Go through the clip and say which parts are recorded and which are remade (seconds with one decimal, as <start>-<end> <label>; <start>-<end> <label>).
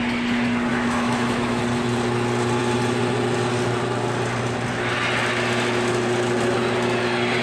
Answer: 0.0-0.7 recorded; 0.7-1.6 remade; 1.6-7.4 recorded